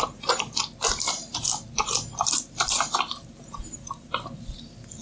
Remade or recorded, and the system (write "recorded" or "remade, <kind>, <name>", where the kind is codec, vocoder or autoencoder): recorded